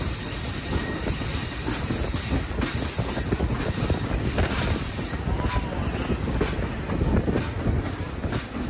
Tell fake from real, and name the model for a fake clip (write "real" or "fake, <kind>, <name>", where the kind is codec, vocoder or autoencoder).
real